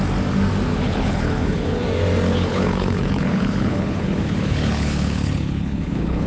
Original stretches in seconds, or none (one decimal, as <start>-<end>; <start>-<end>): 0.0-0.7; 1.8-2.3